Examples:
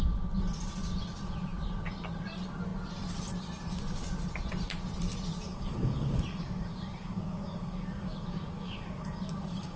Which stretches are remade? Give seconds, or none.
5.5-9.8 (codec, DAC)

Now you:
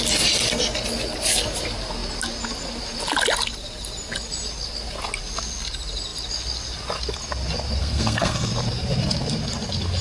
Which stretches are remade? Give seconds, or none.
7.8-8.5 (codec, SNAC)

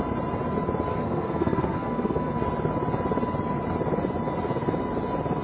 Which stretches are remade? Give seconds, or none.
0.9-2.3 (codec, SNAC)

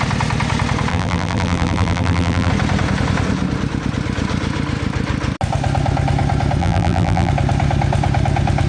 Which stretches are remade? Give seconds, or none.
0.9-2.5 (vocoder, BigVGAN v2); 6.6-7.3

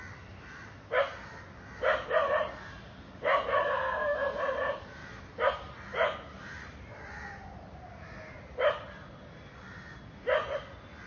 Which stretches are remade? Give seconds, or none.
5.0-6.9 (vocoder, BigVGAN v2)